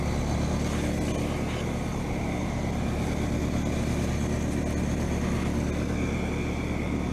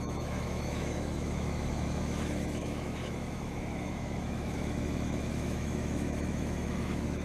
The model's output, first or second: second